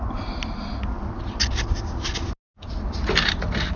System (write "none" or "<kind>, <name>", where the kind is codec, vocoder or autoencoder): none